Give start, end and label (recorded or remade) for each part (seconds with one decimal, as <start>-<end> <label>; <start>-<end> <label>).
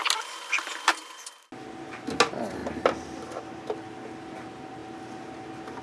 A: 0.0-5.8 recorded